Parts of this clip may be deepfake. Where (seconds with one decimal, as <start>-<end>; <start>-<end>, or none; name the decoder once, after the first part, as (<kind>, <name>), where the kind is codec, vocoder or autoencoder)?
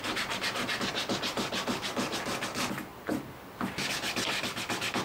none